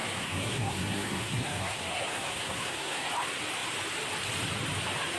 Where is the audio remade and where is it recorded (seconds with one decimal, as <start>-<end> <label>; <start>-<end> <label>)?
0.0-3.1 remade; 3.1-5.2 recorded